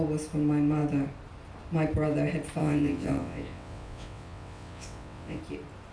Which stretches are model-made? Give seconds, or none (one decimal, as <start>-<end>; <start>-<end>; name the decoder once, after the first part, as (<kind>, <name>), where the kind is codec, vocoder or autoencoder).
2.6-5.4 (vocoder, WaveNeXt)